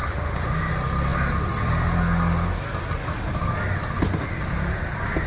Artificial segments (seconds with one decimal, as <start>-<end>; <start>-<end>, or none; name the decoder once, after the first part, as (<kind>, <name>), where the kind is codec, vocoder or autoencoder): 0.0-0.7 (autoencoder, DAC-VAE)